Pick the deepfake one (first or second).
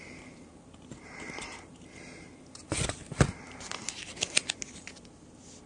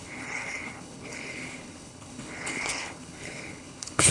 second